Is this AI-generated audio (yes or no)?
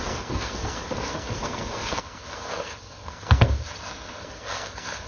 yes